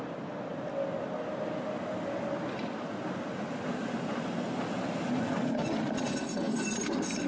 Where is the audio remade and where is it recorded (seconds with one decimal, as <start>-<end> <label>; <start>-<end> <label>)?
0.0-7.3 recorded